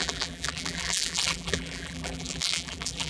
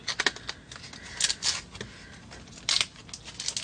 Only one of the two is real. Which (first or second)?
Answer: second